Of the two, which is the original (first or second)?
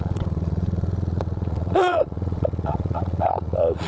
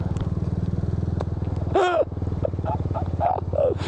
second